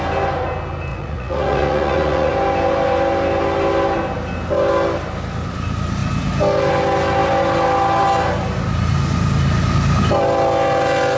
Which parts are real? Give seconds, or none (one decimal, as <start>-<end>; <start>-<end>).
0.0-0.9; 2.3-11.2